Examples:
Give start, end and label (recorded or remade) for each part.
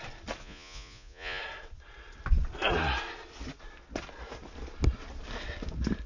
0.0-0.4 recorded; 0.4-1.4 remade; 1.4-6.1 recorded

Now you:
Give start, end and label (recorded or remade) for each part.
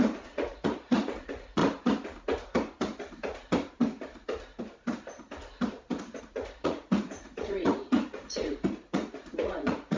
0.0-1.6 remade; 1.6-6.2 recorded; 6.2-10.0 remade